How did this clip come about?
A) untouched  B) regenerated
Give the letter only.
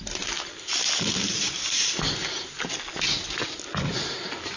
A